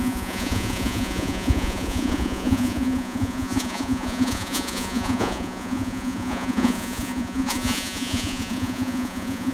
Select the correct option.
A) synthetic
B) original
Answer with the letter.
A